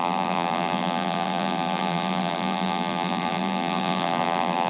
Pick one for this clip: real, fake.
fake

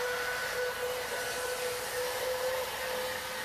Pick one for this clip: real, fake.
real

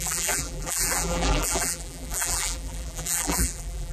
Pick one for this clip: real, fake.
fake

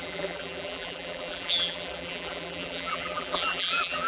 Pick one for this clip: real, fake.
fake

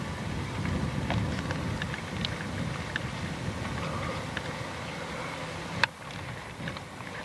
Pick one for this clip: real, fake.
real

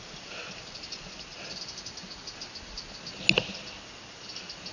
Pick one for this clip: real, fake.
real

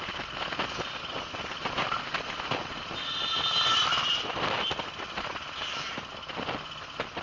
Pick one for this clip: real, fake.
real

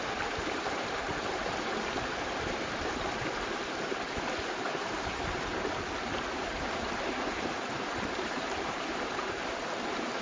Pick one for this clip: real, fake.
fake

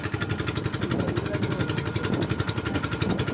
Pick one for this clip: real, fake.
real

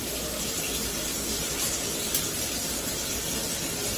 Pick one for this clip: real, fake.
real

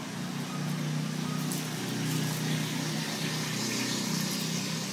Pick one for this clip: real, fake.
real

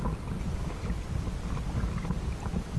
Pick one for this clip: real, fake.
real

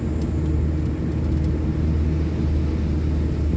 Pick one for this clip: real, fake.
real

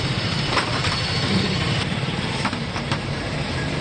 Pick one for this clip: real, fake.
fake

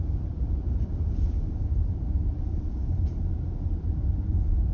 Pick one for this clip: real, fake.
fake